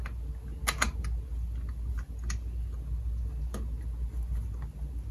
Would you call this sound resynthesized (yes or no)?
no